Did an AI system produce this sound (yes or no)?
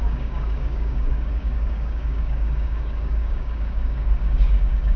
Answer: yes